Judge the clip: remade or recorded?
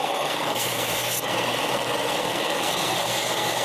remade